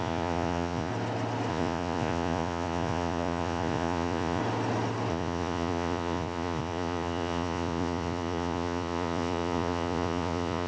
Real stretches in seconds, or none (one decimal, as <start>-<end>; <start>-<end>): 0.9-1.5; 4.4-5.1